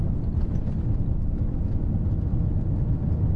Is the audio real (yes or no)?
yes